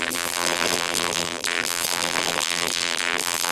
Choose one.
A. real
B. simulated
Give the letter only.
B